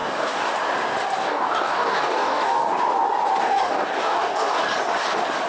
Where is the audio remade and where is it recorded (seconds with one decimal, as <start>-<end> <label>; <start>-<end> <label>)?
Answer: 0.0-0.5 remade; 0.5-1.2 recorded; 1.2-2.8 remade; 2.8-3.4 recorded; 3.4-4.6 remade; 4.6-5.5 recorded